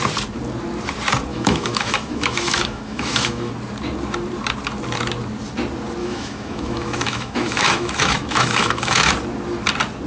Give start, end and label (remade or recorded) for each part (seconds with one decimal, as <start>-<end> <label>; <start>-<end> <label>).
0.0-1.3 recorded; 1.3-3.5 remade; 3.5-6.0 recorded; 6.0-9.1 remade; 9.1-10.1 recorded